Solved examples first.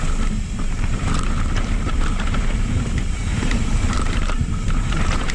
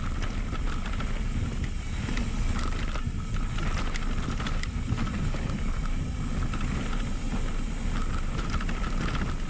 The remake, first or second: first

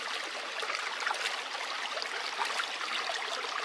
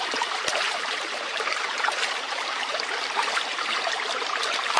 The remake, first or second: second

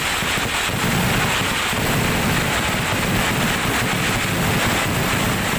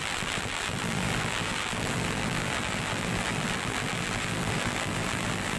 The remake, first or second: second